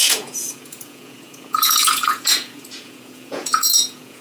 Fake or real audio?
fake